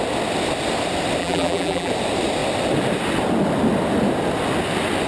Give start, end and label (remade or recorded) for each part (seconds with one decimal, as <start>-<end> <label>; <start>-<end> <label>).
0.0-1.2 recorded; 1.2-1.9 remade; 1.9-5.1 recorded

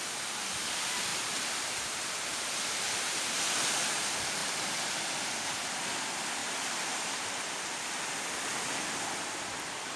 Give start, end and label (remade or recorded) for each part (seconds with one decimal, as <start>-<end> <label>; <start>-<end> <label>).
0.0-1.1 recorded; 1.1-1.8 remade; 1.8-2.3 recorded; 2.3-3.4 remade; 3.4-4.4 recorded; 4.4-5.0 remade; 5.0-6.4 recorded; 6.4-7.8 remade; 7.8-10.0 recorded

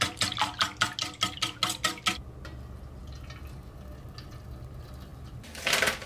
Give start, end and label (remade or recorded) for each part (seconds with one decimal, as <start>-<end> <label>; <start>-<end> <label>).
0.0-6.1 recorded